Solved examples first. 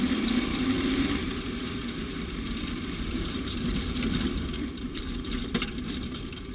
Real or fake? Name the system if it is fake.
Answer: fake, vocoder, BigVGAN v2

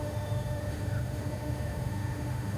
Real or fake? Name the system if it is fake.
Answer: fake, autoencoder, DAC-VAE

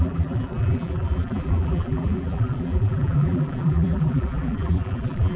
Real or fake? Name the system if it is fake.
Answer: fake, vocoder, BigVGAN v2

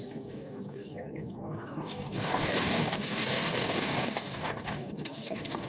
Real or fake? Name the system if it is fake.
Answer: fake, codec, DAC